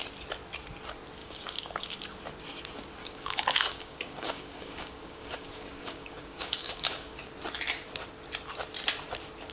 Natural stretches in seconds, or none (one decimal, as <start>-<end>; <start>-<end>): 0.0-1.2; 1.9-3.0; 7.3-9.5